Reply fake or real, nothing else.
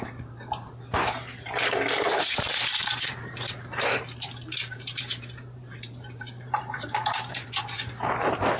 fake